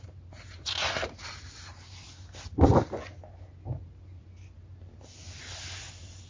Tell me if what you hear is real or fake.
real